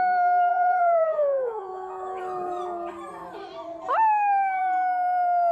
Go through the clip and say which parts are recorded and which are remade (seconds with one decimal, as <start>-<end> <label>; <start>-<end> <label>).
0.0-0.5 recorded; 0.5-2.2 remade; 2.2-5.5 recorded